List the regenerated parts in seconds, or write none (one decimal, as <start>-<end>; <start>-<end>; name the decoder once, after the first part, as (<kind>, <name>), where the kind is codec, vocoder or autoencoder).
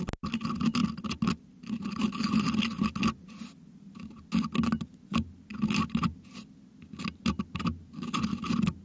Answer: none